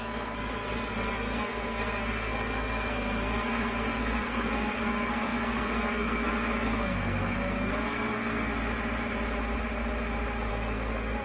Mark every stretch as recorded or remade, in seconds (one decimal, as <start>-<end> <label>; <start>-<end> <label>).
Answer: 0.0-8.5 remade; 8.5-10.5 recorded; 10.5-11.2 remade